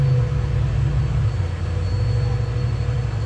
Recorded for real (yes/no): yes